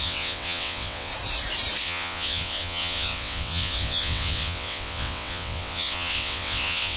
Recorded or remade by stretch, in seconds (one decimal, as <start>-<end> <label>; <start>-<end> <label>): 0.0-1.1 remade; 1.1-1.8 recorded; 1.8-7.0 remade